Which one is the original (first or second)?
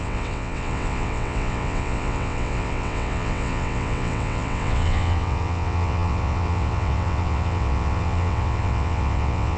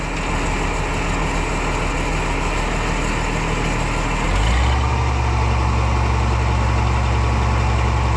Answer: second